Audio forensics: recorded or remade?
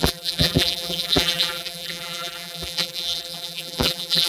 remade